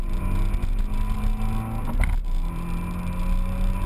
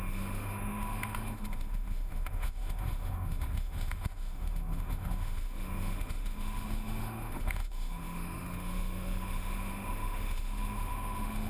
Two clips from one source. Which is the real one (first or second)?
first